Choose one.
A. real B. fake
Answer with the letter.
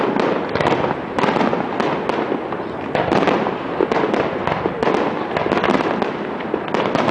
A